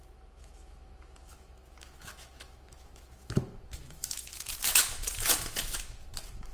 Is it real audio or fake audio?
fake